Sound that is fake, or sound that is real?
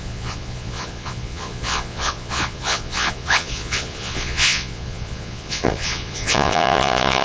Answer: fake